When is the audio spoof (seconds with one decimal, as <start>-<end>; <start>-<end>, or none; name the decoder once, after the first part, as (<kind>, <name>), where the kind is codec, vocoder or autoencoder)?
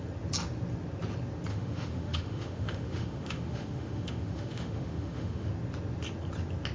1.5-5.5 (autoencoder, DAC-VAE)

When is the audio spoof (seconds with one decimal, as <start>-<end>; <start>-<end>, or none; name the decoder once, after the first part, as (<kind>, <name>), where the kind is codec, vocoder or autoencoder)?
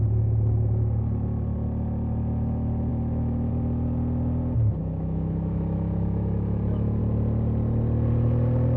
2.9-3.5 (autoencoder, DAC-VAE); 4.8-7.0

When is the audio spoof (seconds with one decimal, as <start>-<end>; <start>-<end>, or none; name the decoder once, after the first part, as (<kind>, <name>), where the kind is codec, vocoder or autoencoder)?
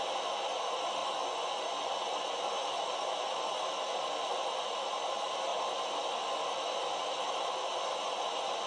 1.0-1.6 (vocoder, Vocos)